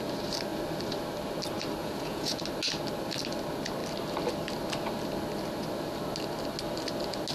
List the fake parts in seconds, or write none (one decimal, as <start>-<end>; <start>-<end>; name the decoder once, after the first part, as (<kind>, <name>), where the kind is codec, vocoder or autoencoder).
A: 1.8-2.4 (vocoder, Vocos)